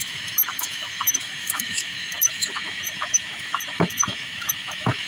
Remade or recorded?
remade